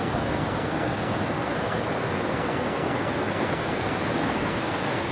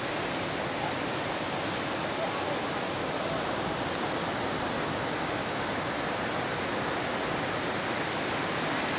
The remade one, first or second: first